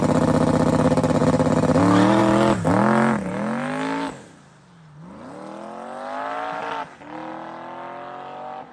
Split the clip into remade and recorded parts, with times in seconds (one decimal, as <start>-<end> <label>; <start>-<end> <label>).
0.0-8.7 recorded